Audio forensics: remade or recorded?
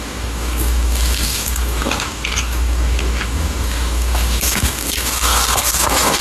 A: remade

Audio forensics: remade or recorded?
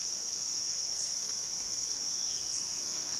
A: remade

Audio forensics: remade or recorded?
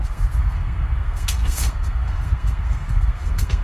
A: remade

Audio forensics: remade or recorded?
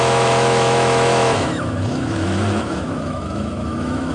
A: remade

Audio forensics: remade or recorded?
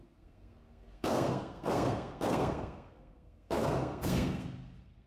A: remade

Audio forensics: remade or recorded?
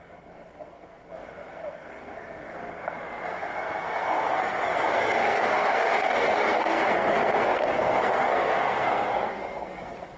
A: remade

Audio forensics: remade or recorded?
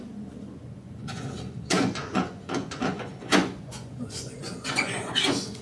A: remade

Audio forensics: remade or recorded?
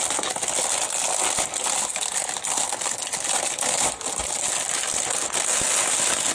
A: recorded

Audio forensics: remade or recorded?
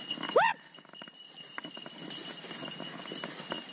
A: recorded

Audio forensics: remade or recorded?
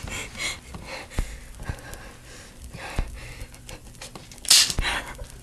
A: recorded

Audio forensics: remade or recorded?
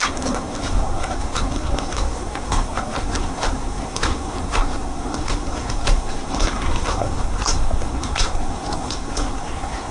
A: remade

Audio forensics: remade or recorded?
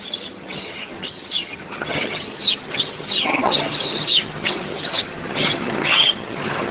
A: remade